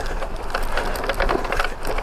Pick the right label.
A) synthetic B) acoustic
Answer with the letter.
B